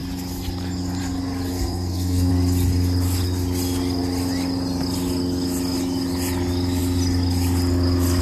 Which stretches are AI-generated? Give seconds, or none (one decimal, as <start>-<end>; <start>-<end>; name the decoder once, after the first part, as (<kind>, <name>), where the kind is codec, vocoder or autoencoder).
1.5-2.3 (codec, SNAC)

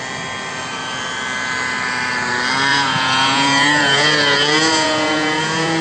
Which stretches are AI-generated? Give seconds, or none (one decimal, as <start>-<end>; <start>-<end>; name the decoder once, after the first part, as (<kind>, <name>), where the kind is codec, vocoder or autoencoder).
2.7-5.8 (vocoder, Vocos)